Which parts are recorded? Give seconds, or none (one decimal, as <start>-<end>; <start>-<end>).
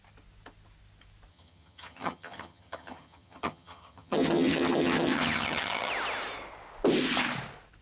0.0-1.3; 5.9-7.8